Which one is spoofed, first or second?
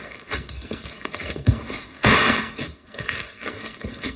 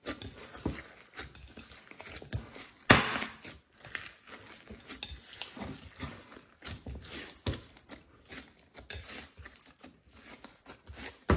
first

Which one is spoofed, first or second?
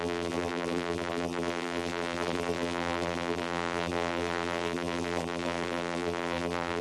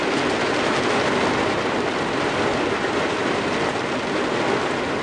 first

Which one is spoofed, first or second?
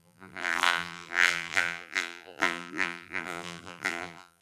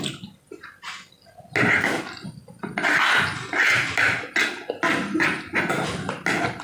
first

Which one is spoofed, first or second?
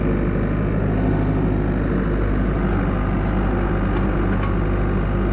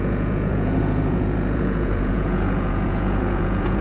second